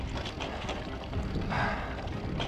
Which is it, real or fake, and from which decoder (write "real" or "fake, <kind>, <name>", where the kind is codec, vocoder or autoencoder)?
real